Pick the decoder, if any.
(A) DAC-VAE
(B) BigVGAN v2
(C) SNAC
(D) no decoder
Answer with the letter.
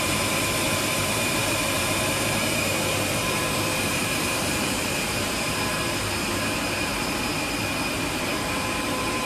B